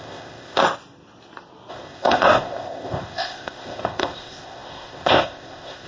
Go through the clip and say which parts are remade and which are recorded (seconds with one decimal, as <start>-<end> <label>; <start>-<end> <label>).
0.0-0.6 remade; 0.6-1.7 recorded; 1.7-5.9 remade